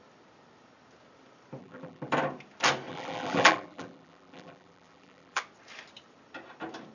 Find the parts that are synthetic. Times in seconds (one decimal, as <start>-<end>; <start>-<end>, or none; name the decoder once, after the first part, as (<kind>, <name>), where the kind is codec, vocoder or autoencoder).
1.6-2.1 (vocoder, BigVGAN v2); 2.9-5.4